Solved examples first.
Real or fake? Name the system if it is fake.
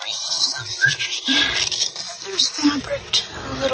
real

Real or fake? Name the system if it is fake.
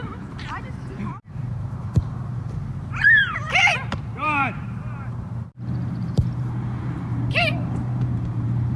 fake, vocoder, BigVGAN v2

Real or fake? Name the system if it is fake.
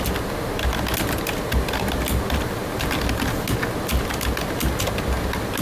real